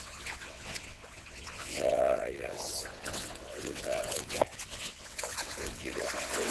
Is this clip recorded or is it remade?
remade